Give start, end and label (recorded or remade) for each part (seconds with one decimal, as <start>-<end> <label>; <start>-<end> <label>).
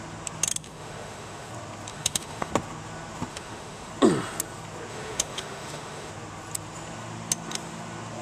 0.0-0.6 recorded; 0.6-1.5 remade; 1.5-1.9 recorded; 1.9-2.5 remade; 2.5-3.3 recorded; 3.3-3.9 remade; 3.9-4.9 recorded; 4.9-6.1 remade; 6.1-8.2 recorded